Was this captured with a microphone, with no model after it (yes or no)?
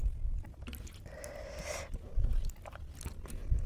yes